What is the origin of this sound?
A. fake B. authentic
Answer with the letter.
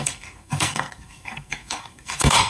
A